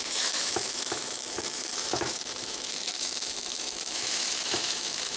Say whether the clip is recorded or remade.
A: remade